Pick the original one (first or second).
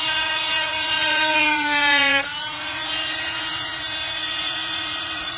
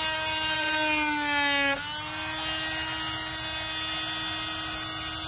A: second